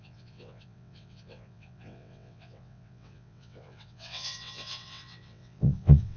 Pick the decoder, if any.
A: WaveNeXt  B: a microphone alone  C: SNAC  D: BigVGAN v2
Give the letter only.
A